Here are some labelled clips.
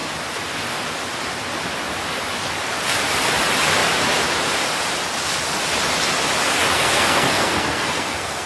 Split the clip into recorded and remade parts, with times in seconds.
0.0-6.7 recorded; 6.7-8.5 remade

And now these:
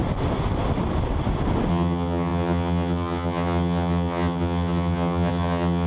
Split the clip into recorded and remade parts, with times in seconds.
0.0-1.7 recorded; 1.7-5.9 remade

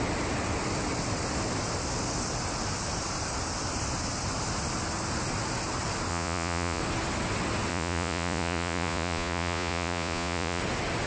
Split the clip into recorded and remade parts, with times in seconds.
0.0-6.1 recorded; 6.1-6.8 remade; 6.8-7.7 recorded; 7.7-10.6 remade; 10.6-11.1 recorded

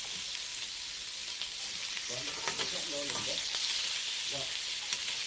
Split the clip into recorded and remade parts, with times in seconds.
0.0-5.3 recorded

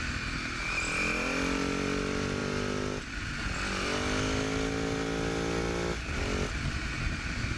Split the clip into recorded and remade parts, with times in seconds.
0.0-7.6 recorded